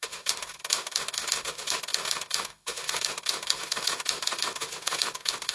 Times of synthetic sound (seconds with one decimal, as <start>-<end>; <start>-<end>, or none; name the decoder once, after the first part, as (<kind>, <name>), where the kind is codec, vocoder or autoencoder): 0.0-5.5 (autoencoder, DAC-VAE)